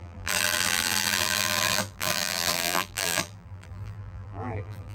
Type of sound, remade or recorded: remade